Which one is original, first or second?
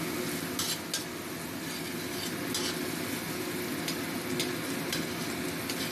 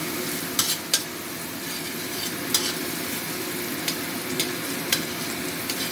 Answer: first